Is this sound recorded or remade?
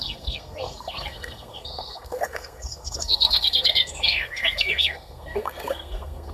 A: remade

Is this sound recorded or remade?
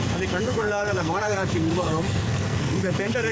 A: remade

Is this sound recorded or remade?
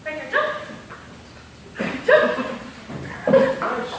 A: recorded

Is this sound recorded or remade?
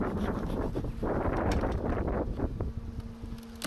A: recorded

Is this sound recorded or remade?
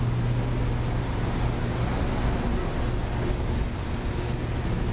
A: recorded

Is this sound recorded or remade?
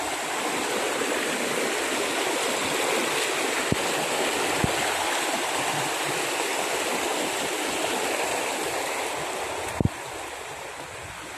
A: recorded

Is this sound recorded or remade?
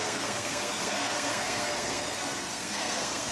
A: remade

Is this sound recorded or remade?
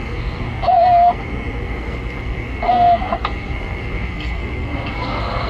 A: remade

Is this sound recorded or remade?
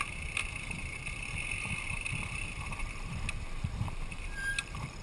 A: recorded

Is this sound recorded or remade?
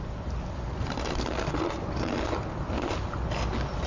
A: recorded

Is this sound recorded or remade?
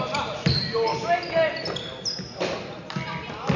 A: recorded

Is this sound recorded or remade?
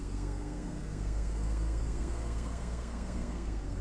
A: remade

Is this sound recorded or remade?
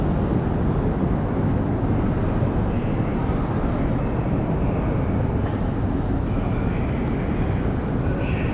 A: recorded